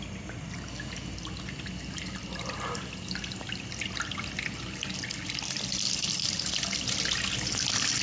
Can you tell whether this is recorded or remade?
recorded